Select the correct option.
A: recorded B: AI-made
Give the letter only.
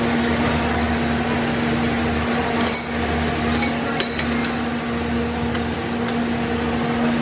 A